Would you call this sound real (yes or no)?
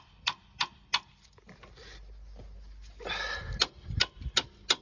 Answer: yes